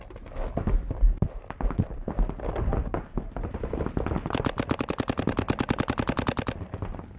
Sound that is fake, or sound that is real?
real